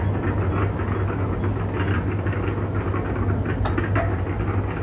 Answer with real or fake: real